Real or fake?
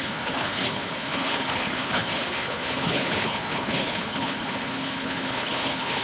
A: fake